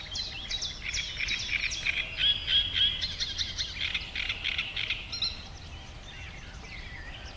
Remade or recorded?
recorded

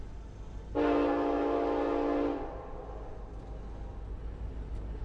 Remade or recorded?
recorded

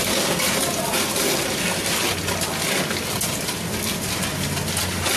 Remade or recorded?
recorded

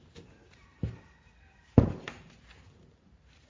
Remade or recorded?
remade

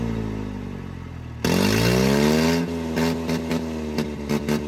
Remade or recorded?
recorded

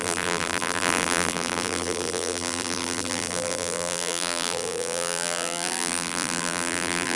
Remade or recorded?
remade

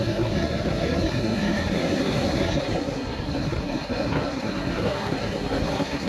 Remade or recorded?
remade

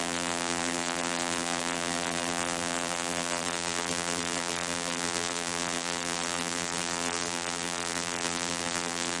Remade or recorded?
remade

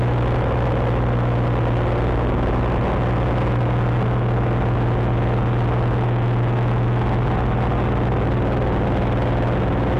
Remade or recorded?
recorded